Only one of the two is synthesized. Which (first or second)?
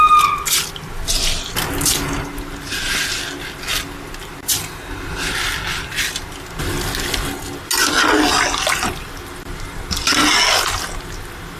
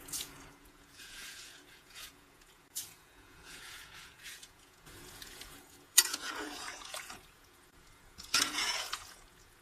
second